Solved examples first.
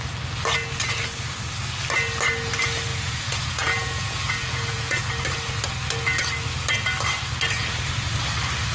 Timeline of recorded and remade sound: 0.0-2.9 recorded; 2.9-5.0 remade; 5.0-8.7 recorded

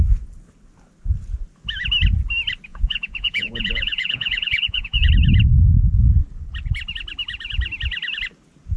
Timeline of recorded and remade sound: 0.0-2.7 recorded; 2.7-5.1 remade; 5.1-8.8 recorded

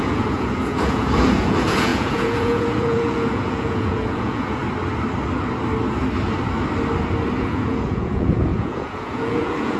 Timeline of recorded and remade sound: 0.0-4.6 remade; 4.6-7.4 recorded; 7.4-9.8 remade

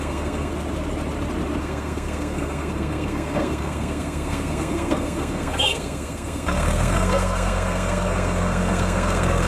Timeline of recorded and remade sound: 0.0-0.5 remade; 0.5-1.6 recorded; 1.6-9.5 remade